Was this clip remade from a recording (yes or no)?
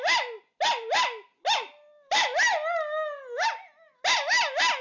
no